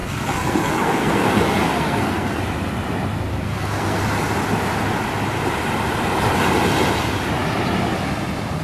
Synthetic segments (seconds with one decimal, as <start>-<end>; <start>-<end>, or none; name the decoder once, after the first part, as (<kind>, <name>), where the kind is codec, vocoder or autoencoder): 0.0-2.4 (codec, SNAC); 3.3-4.0